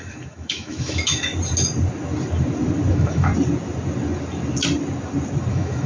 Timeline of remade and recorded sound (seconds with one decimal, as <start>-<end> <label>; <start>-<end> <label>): 0.0-1.3 remade; 1.3-2.9 recorded; 2.9-3.3 remade; 3.3-5.5 recorded; 5.5-5.9 remade